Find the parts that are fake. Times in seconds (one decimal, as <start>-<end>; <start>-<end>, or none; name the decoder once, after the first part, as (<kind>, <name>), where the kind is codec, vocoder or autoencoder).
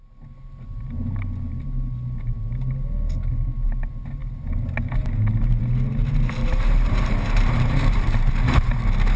6.4-8.3 (vocoder, BigVGAN v2)